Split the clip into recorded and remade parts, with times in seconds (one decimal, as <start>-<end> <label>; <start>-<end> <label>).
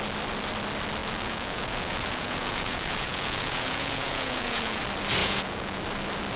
0.0-1.0 recorded; 1.0-4.8 remade; 4.8-5.2 recorded; 5.2-5.8 remade; 5.8-6.4 recorded